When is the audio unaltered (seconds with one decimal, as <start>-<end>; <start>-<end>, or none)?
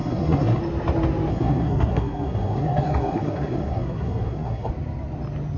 0.6-1.3; 4.7-5.6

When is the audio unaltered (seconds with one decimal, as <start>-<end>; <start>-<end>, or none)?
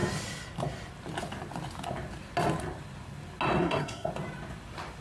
0.0-3.6; 4.1-5.0